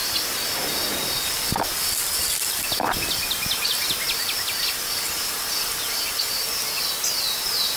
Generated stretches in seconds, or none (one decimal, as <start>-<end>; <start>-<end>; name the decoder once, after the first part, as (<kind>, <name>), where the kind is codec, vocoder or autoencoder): none